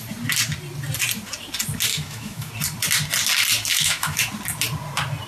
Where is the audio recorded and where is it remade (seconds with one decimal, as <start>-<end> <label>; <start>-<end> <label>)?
0.0-1.9 recorded; 1.9-2.5 remade; 2.5-3.7 recorded; 3.7-4.3 remade; 4.3-5.3 recorded